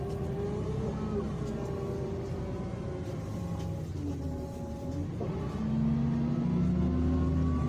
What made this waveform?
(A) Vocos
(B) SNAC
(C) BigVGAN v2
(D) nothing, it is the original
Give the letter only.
D